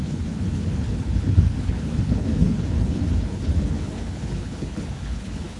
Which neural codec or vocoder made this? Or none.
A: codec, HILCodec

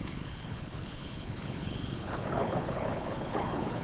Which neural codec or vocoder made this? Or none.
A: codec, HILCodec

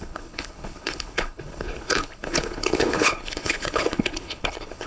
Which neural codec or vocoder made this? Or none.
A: codec, HILCodec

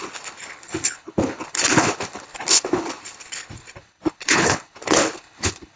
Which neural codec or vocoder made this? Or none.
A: codec, HILCodec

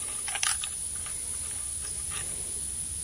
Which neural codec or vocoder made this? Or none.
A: none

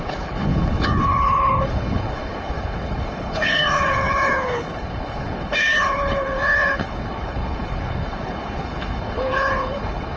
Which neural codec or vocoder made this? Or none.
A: codec, HILCodec